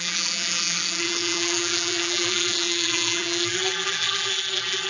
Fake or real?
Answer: fake